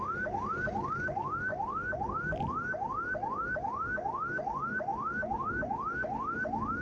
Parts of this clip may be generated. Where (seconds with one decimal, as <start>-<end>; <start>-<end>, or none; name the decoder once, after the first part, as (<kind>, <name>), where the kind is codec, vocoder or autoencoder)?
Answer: 4.9-5.5 (autoencoder, DAC-VAE)